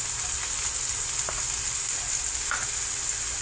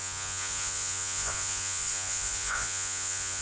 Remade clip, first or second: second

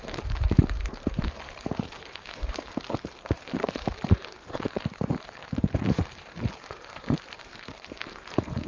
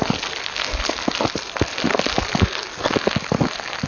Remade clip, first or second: first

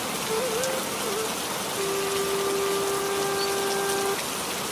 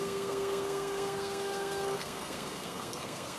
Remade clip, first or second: second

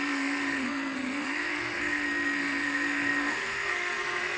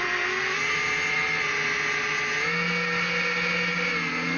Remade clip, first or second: first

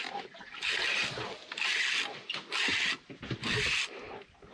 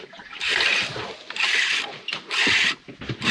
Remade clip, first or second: second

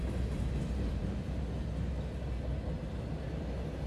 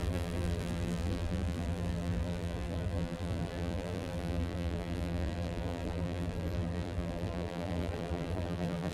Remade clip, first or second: second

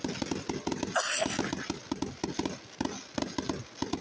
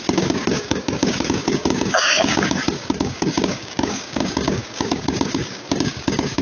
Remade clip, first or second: second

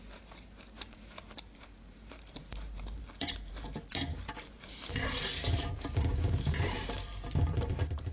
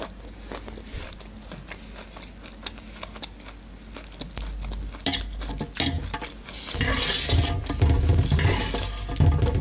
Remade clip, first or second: first